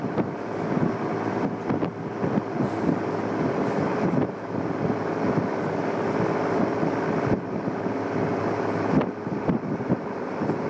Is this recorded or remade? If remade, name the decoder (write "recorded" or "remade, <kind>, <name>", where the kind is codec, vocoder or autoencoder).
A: recorded